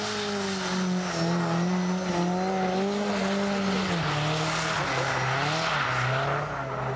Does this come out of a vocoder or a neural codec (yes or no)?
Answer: no